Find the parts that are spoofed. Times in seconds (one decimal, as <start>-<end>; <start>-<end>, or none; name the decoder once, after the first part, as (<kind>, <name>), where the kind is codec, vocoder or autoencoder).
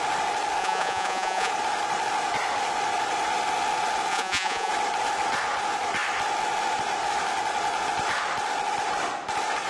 0.6-1.5 (vocoder, Vocos); 4.1-4.7